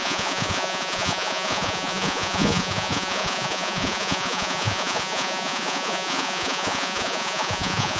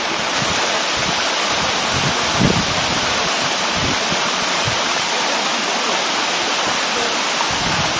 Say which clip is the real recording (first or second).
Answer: second